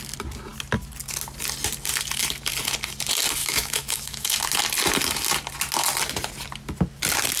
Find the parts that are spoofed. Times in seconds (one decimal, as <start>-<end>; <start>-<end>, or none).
3.4-4.4